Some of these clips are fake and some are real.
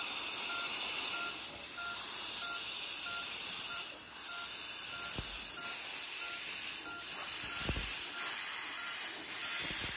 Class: real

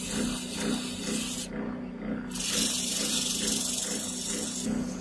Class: real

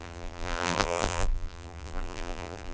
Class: fake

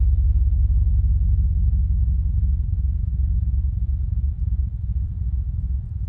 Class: real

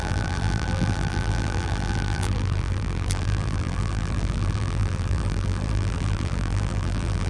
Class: fake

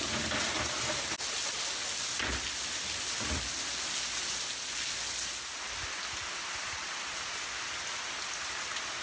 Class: real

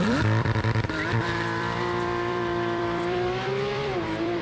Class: fake